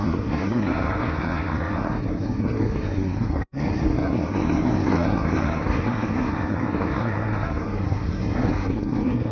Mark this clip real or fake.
fake